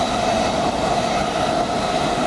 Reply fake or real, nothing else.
real